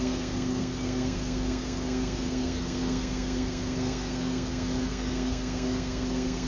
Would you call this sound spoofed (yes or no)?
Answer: yes